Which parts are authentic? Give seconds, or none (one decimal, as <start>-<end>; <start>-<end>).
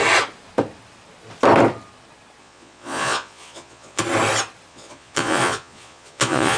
0.0-2.4; 4.0-4.7